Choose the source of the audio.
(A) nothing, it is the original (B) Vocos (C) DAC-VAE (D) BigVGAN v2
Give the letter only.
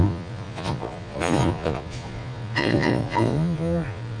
B